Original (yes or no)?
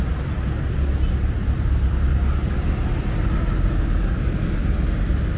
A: yes